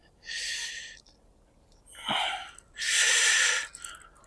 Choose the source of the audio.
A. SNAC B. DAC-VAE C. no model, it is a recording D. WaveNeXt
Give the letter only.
C